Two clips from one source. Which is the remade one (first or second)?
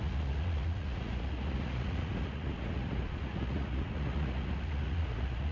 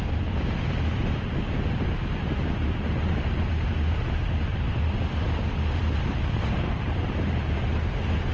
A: first